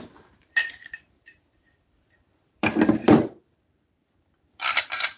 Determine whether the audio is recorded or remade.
remade